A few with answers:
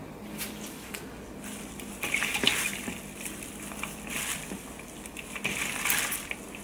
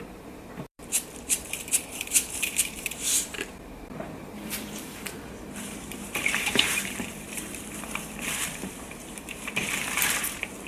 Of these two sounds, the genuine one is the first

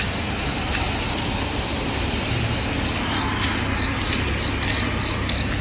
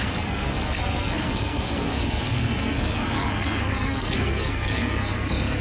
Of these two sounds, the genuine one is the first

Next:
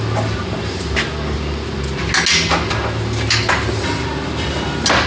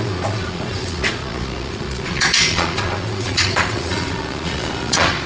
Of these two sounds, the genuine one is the first